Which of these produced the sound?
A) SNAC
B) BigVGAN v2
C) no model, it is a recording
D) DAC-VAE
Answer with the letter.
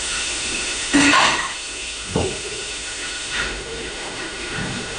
D